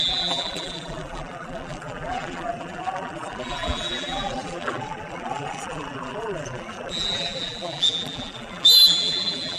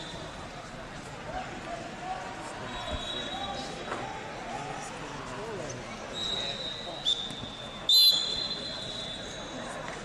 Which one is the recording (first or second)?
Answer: second